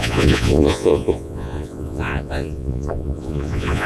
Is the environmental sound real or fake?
fake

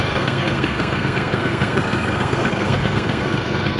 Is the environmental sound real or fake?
fake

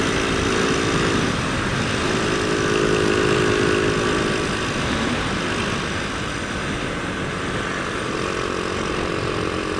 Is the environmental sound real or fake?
real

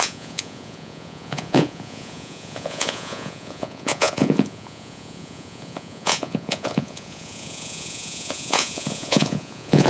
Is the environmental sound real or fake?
fake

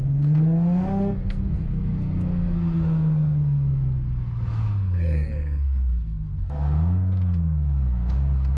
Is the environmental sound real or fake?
fake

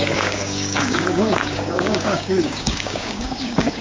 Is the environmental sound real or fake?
fake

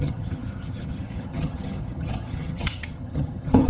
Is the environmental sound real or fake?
fake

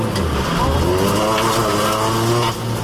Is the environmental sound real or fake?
real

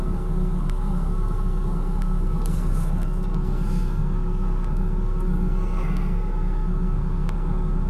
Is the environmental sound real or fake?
fake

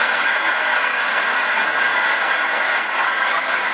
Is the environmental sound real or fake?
fake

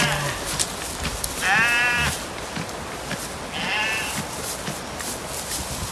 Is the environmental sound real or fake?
real